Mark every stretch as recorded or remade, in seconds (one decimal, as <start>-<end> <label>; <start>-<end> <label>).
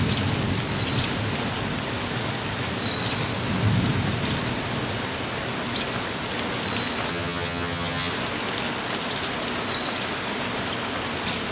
0.0-7.1 recorded; 7.1-8.1 remade; 8.1-11.5 recorded